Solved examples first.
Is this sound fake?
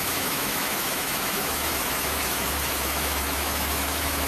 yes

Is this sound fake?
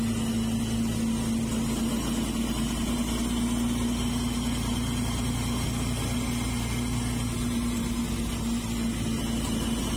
no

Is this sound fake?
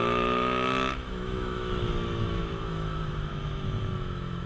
yes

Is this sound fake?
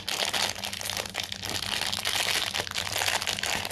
no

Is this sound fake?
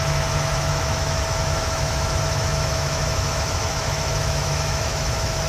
yes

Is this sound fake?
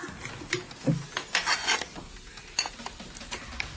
no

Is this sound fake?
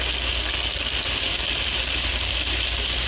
no